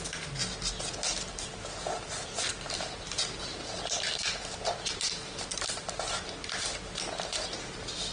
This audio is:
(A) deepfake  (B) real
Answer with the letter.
B